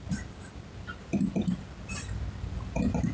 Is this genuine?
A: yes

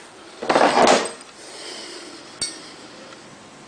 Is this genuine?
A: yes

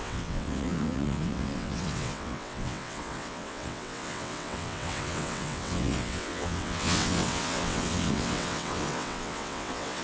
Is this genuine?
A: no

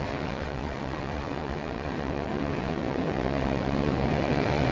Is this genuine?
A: no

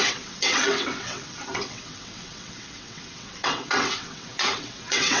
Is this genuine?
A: no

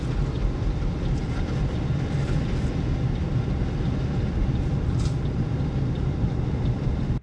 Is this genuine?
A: yes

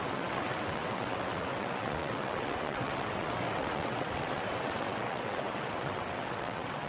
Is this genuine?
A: no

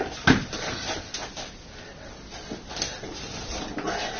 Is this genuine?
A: yes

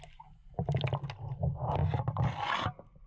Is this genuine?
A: yes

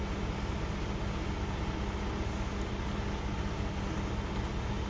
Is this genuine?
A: yes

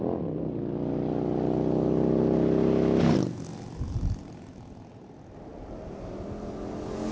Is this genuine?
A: yes